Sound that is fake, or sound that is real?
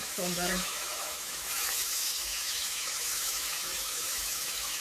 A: fake